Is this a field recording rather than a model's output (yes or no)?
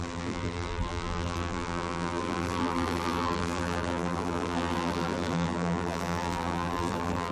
no